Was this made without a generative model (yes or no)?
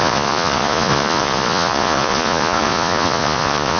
no